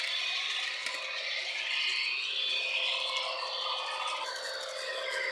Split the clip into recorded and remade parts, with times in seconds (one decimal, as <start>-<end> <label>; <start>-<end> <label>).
0.0-2.5 recorded; 2.5-3.6 remade; 3.6-5.3 recorded